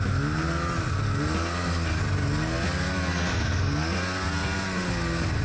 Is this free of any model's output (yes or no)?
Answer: yes